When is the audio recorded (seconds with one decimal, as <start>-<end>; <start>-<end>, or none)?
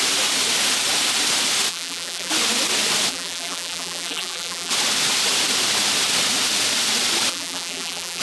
0.0-1.7; 2.3-3.1; 4.7-7.3